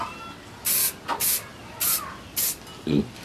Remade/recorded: recorded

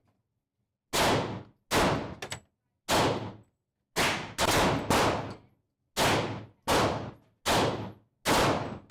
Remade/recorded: recorded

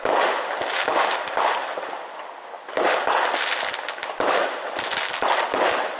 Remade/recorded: recorded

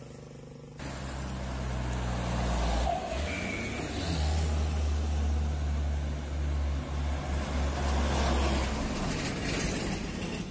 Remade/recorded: recorded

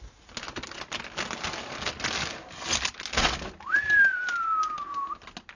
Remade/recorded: recorded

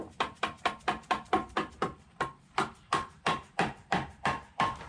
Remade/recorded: remade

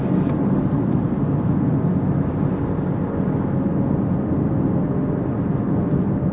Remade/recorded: recorded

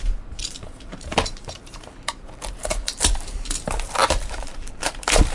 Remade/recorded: remade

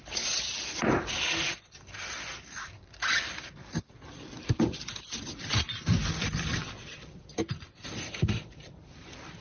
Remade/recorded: remade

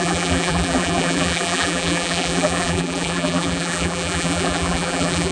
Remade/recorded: remade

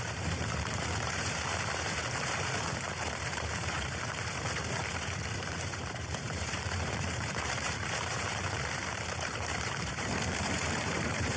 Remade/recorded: remade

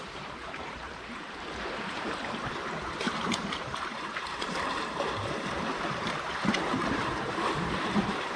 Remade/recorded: remade